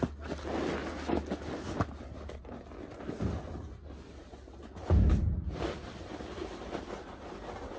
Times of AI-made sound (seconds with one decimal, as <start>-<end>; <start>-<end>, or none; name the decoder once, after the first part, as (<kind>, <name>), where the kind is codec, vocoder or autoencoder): none